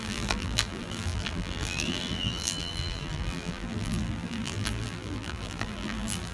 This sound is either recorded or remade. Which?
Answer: remade